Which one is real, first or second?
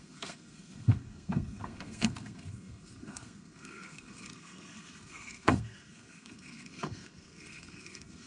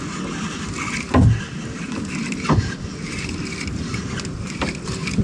second